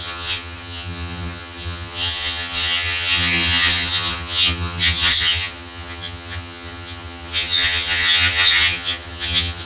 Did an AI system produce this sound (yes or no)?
yes